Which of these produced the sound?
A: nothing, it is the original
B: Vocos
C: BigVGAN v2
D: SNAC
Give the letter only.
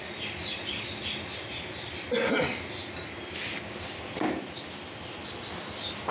A